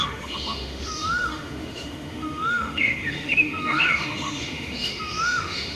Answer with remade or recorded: remade